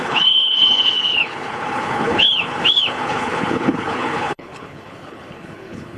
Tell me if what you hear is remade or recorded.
remade